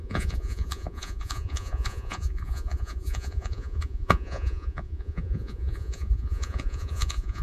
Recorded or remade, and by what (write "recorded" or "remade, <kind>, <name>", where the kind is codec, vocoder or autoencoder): remade, vocoder, Vocos